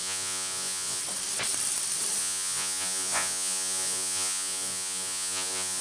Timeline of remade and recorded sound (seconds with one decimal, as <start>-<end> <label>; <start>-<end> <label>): 0.0-1.0 remade; 1.0-2.2 recorded; 2.2-5.8 remade